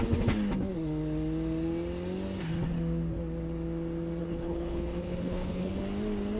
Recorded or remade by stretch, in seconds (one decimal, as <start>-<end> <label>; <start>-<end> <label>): 0.0-4.2 recorded; 4.2-5.8 remade; 5.8-6.4 recorded